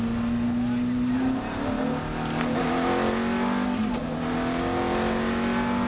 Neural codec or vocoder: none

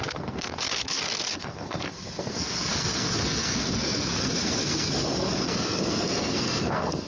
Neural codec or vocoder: codec, SNAC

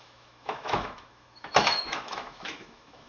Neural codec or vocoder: autoencoder, DAC-VAE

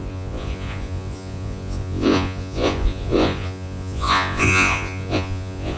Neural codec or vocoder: vocoder, Vocos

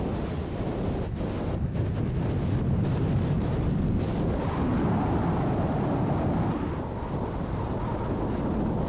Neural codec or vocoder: none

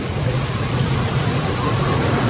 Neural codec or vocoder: vocoder, Vocos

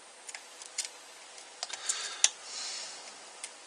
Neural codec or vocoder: none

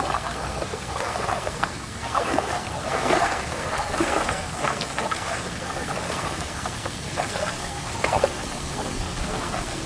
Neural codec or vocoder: codec, SNAC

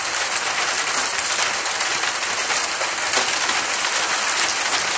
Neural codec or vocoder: none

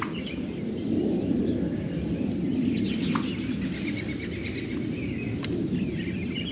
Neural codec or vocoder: none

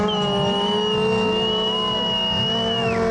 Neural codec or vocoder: none